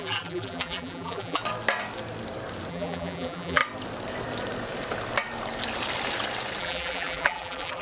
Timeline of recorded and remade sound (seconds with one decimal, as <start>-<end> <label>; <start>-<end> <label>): 0.0-1.4 remade; 1.4-2.7 recorded; 2.7-3.6 remade; 3.6-6.6 recorded; 6.6-7.8 remade